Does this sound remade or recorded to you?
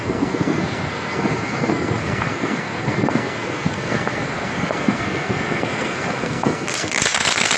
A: remade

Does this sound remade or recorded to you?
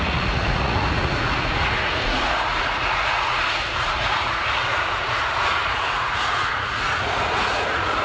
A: remade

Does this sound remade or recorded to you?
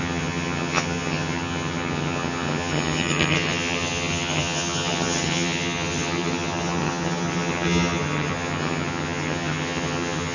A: remade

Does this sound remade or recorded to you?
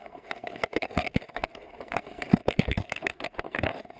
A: remade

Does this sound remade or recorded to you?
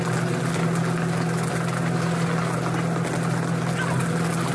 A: recorded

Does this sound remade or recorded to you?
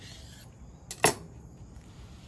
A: recorded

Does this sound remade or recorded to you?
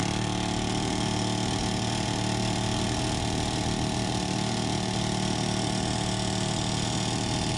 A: recorded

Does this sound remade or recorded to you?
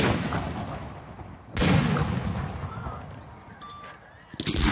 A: recorded